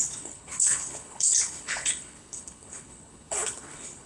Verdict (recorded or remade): remade